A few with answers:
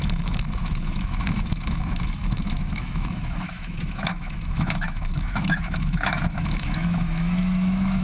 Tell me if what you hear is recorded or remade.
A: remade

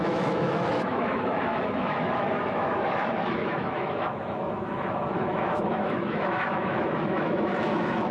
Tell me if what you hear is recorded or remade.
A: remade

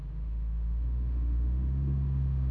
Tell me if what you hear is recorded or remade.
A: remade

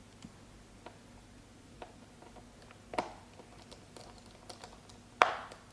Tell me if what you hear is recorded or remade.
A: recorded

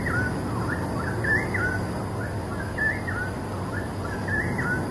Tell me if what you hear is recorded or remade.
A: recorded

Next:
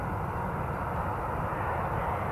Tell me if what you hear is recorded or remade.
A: recorded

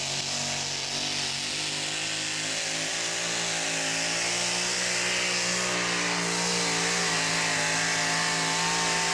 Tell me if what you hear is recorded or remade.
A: recorded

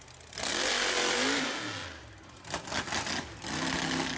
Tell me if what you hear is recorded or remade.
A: recorded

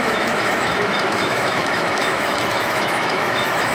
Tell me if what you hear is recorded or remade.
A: remade